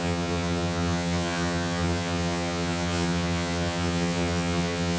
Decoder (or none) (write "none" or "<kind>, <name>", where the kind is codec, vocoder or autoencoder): vocoder, HiFi-GAN